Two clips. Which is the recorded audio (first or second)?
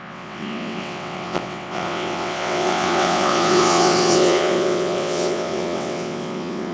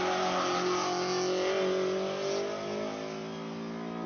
second